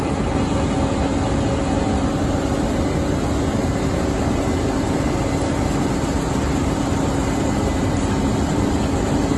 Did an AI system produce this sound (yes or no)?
no